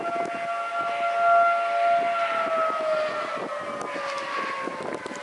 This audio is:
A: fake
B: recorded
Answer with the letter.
B